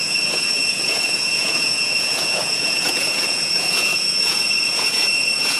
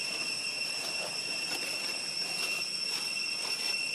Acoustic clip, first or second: second